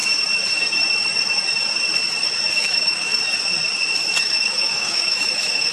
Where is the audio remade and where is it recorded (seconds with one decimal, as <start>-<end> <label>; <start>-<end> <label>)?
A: 0.0-2.6 recorded; 2.6-3.1 remade; 3.1-4.2 recorded; 4.2-5.7 remade